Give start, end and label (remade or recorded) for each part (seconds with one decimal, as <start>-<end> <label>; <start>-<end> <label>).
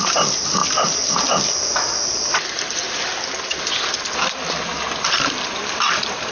0.0-0.6 remade; 0.6-1.1 recorded; 1.1-3.1 remade; 3.1-3.9 recorded; 3.9-6.3 remade